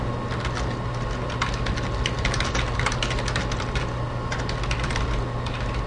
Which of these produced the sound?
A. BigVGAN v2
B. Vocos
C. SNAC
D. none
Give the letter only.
D